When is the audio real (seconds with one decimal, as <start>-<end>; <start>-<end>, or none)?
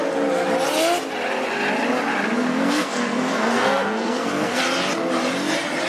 0.0-2.5; 4.6-5.9